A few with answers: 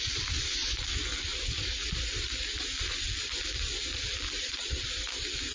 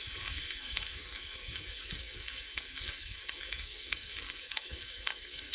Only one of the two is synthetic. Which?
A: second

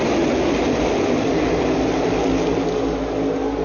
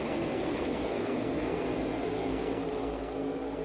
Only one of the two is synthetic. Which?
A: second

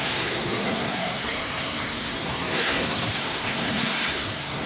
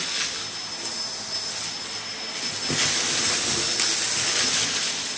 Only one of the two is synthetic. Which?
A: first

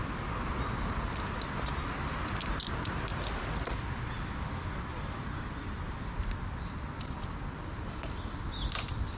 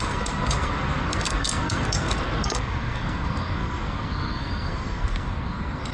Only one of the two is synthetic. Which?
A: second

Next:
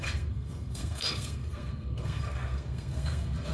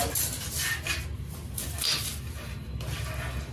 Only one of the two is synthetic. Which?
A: first